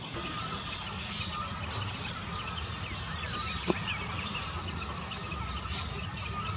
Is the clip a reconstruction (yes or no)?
no